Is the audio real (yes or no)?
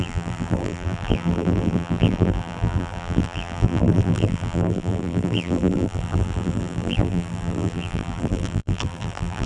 no